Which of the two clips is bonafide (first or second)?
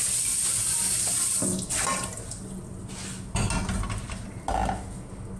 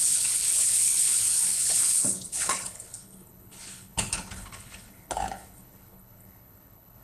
first